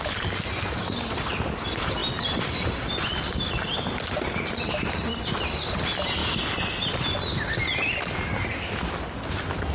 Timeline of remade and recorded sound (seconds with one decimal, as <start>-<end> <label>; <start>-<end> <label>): 0.0-9.7 recorded